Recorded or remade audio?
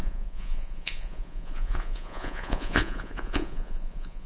remade